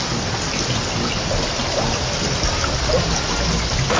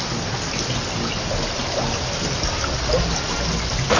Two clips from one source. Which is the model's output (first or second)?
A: first